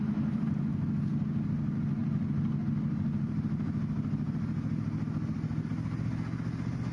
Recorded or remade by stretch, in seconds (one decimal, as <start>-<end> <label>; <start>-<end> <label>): 0.0-6.9 recorded